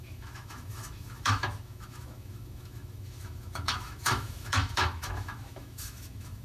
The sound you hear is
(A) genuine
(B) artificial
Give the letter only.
B